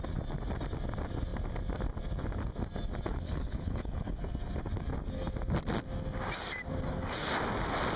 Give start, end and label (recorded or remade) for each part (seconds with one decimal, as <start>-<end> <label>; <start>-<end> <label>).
0.0-3.1 recorded; 3.1-4.2 remade; 4.2-8.0 recorded